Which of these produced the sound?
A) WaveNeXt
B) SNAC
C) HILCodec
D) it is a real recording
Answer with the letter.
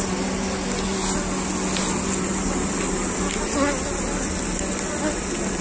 D